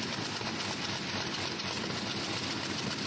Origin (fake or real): real